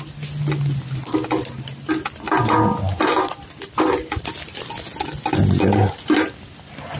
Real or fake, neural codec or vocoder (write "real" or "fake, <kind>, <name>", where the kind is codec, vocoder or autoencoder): real